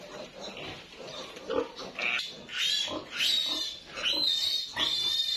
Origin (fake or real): real